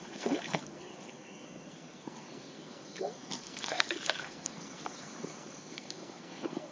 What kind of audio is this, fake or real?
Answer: fake